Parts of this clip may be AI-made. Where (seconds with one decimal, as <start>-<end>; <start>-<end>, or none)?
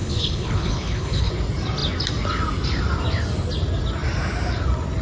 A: 0.0-1.3